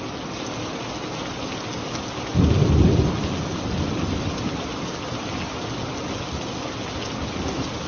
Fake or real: real